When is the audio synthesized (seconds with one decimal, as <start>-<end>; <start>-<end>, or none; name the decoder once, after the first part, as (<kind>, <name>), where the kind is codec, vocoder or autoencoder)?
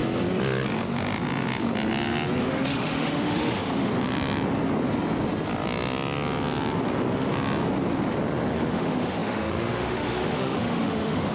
2.4-3.9 (autoencoder, DAC-VAE); 8.7-11.3